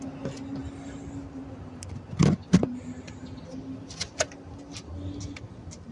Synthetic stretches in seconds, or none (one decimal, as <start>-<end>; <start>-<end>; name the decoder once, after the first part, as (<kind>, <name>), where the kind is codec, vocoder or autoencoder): none